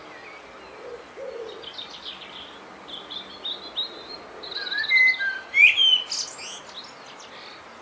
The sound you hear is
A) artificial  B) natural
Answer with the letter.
B